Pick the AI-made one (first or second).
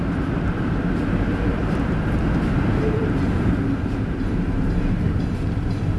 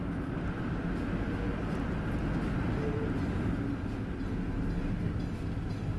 first